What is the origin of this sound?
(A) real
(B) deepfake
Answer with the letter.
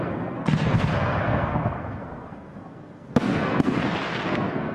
B